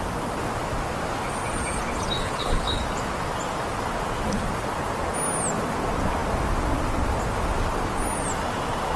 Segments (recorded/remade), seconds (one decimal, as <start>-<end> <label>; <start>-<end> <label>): 0.0-2.2 recorded; 2.2-2.8 remade; 2.8-9.0 recorded